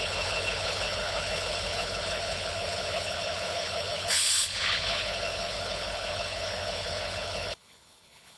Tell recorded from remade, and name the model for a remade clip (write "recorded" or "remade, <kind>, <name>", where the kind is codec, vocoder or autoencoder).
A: remade, codec, HILCodec